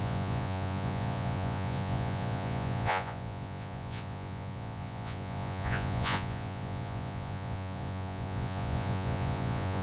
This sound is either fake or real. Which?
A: fake